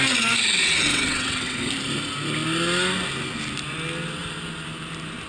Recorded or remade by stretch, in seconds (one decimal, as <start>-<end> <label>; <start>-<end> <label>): 0.0-0.9 recorded; 0.9-1.7 remade; 1.7-5.3 recorded